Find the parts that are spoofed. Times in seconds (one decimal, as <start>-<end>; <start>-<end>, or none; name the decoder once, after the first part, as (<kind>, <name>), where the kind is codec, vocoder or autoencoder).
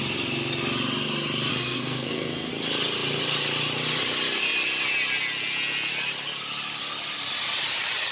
1.5-2.5 (codec, SNAC)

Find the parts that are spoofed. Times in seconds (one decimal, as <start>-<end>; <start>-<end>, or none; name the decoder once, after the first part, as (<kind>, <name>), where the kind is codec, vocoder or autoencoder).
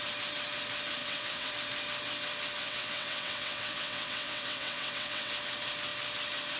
1.0-1.5 (vocoder, WaveNeXt); 2.6-5.3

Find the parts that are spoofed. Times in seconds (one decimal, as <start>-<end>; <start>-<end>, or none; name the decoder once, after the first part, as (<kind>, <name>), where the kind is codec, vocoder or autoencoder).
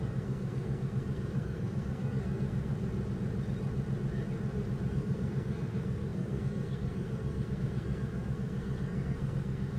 0.0-2.7 (codec, SNAC); 4.9-9.8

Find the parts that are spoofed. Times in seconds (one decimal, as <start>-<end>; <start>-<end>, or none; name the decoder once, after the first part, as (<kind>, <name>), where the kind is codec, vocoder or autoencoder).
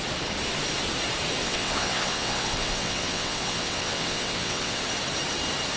1.4-4.8 (vocoder, WaveNeXt)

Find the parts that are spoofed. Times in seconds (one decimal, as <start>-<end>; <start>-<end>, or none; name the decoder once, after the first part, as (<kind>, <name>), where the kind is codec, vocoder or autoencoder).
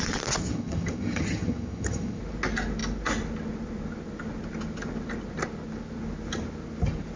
0.4-2.2 (vocoder, HiFi-GAN)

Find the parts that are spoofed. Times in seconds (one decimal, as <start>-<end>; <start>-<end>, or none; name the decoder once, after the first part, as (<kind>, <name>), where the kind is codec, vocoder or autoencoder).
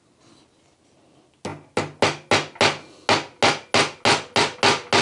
none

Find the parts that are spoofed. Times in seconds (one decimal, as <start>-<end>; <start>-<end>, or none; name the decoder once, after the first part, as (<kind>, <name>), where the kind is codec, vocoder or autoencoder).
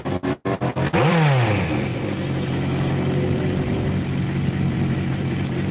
none